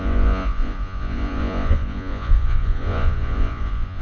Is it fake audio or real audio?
fake